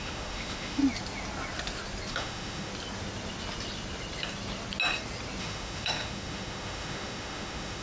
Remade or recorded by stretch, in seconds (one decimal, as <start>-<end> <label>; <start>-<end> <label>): 0.0-0.8 remade; 0.8-2.1 recorded; 2.1-2.7 remade; 2.7-5.4 recorded; 5.4-7.8 remade